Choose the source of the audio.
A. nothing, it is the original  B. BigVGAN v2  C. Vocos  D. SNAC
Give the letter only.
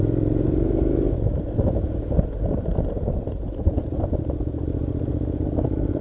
B